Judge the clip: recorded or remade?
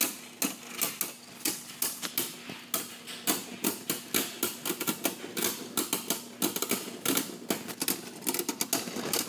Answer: recorded